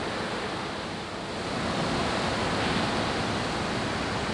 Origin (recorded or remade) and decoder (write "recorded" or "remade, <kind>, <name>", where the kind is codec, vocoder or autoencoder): recorded